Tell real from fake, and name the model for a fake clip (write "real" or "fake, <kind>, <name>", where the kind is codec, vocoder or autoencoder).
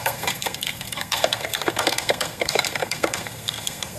fake, codec, SNAC